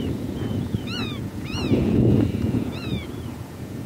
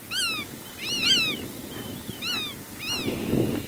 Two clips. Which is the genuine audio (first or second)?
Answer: second